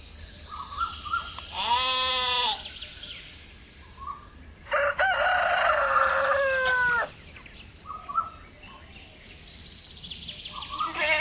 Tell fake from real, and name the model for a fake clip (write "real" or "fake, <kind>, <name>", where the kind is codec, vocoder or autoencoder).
real